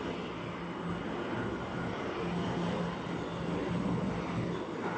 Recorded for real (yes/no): yes